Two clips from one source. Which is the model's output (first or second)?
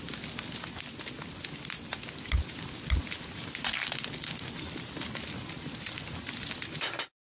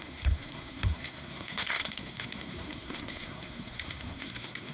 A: second